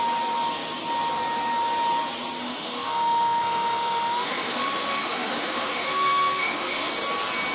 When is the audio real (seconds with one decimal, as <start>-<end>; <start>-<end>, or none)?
0.0-2.4; 6.9-7.5